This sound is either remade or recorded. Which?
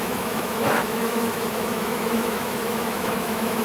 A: remade